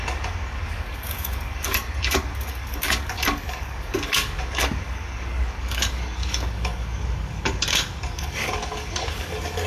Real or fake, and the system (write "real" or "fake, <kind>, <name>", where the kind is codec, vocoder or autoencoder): fake, codec, DAC